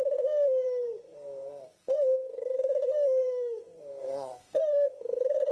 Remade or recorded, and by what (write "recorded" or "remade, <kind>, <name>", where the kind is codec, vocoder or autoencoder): remade, codec, SNAC